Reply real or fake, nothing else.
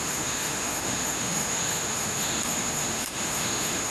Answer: fake